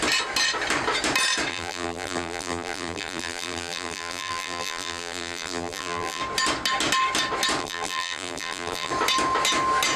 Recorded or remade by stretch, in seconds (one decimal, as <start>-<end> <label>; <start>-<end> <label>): 0.0-1.5 recorded; 1.5-6.2 remade; 6.2-7.6 recorded; 7.6-8.9 remade; 8.9-10.0 recorded